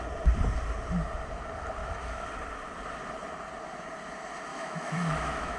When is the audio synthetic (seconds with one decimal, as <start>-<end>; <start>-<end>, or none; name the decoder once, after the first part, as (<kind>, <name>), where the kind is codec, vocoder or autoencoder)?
1.8-2.3 (autoencoder, DAC-VAE); 4.5-5.6